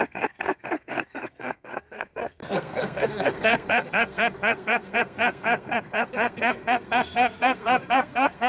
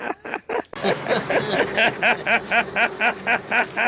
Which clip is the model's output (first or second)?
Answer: first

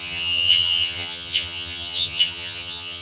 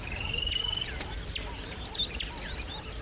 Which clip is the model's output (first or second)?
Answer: first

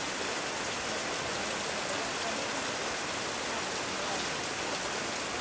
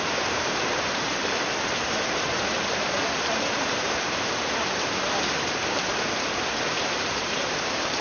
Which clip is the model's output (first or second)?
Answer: second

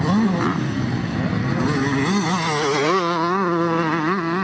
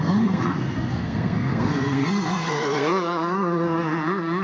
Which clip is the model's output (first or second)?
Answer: second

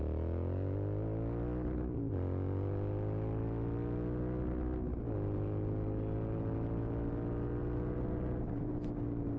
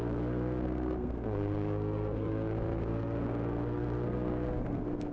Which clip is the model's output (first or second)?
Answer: second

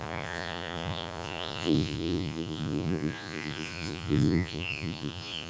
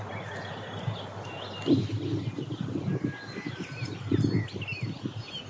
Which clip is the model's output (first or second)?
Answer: first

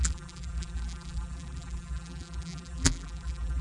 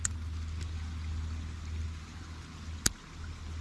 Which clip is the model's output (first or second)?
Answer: first